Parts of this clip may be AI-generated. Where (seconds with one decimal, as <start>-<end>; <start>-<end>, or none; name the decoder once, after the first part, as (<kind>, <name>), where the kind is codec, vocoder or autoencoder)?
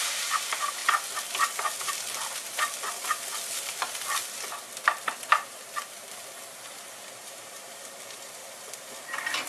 0.0-9.5 (vocoder, BigVGAN v2)